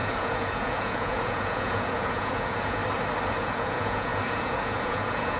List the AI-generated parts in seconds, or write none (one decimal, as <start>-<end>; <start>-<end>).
0.0-2.8; 3.3-5.4